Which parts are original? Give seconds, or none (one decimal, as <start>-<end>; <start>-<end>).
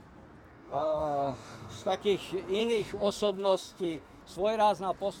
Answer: 0.0-0.5; 2.0-2.6; 4.2-5.2